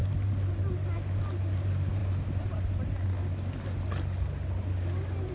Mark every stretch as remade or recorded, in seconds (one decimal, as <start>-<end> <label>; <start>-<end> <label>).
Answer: 0.0-5.3 recorded